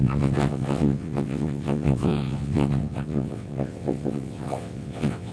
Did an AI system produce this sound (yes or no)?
yes